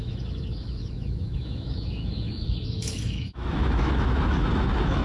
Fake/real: fake